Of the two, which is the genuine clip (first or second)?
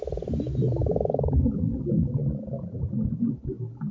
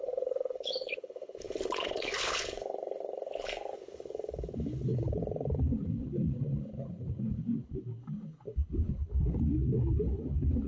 first